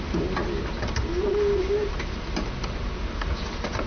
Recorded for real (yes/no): yes